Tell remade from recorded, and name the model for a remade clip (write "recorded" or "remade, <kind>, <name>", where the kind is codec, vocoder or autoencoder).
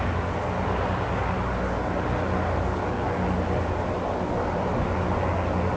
recorded